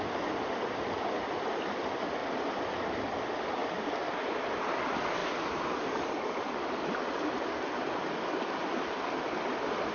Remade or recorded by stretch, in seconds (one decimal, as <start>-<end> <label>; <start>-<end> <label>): 0.0-2.2 recorded; 2.2-3.0 remade; 3.0-9.9 recorded